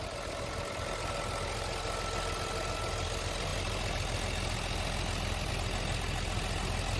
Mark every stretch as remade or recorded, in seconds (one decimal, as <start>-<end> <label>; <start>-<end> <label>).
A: 0.0-7.0 recorded